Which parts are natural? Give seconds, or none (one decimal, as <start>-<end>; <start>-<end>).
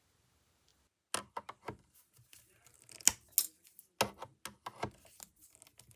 0.0-6.0